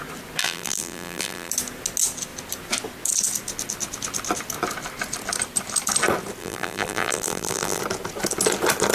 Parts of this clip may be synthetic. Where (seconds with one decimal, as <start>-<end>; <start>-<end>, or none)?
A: 0.4-1.5; 6.4-7.8